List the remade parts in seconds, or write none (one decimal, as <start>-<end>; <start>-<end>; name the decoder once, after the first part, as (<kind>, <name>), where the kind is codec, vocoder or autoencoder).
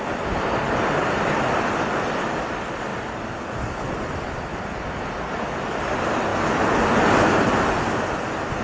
none